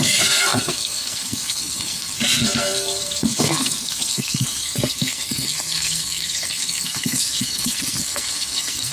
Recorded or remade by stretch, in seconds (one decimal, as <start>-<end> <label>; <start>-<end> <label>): 0.0-8.9 remade